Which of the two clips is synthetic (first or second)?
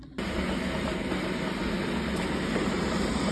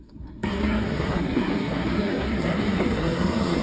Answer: second